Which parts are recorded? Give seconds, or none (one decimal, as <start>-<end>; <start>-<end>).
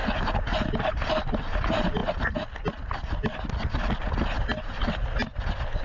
0.0-5.8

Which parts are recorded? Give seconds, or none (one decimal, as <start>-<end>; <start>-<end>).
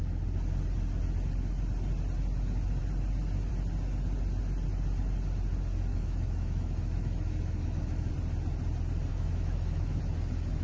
0.0-5.9; 8.1-9.1; 10.0-10.6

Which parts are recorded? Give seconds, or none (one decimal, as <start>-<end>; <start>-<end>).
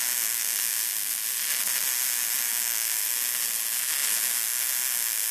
0.0-2.5; 3.1-5.3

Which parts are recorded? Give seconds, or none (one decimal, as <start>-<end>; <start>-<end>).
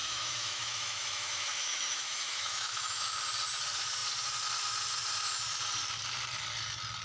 3.2-7.0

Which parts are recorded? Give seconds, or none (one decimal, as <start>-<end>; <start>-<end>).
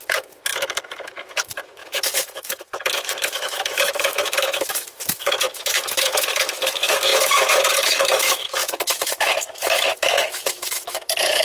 none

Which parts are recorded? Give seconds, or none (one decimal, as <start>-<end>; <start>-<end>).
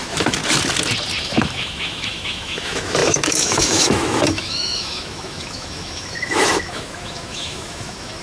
0.4-1.2